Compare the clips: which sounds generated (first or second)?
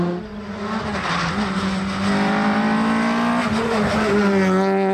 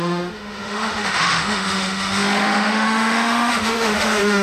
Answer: second